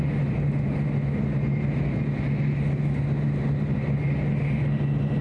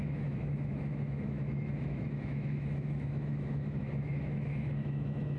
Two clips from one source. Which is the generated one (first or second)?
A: second